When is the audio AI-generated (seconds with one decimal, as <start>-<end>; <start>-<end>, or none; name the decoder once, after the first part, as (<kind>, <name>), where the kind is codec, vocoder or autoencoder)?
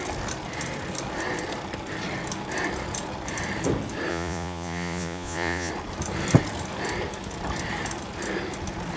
4.1-5.7 (vocoder, Vocos)